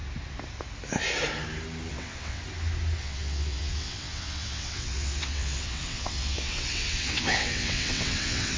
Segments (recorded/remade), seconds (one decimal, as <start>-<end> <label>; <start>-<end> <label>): 0.0-1.9 recorded; 1.9-2.4 remade; 2.4-3.0 recorded; 3.0-8.6 remade